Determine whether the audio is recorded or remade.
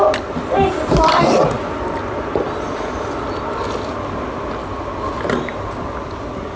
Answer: recorded